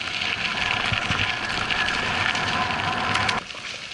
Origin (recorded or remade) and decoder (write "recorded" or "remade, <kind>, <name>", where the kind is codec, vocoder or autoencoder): recorded